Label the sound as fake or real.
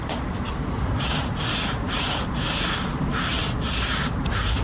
real